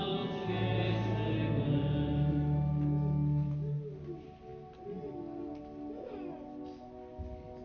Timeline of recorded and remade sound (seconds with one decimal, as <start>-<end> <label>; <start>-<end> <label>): 0.0-7.6 recorded